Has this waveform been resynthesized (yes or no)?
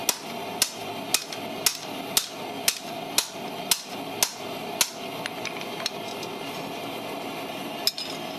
no